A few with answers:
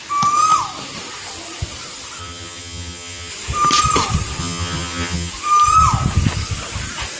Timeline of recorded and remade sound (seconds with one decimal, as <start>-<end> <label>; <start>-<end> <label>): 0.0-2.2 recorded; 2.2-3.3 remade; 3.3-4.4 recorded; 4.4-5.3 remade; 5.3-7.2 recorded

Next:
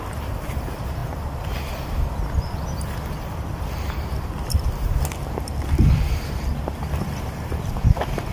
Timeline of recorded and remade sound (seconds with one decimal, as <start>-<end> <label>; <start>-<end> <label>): 0.0-8.3 remade

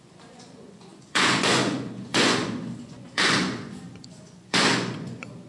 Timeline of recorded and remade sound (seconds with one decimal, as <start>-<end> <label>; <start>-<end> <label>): 0.0-5.5 remade